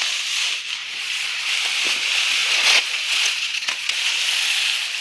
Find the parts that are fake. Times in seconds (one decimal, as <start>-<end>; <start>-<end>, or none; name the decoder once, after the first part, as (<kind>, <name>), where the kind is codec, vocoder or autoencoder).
0.8-1.5 (vocoder, Vocos); 2.4-4.2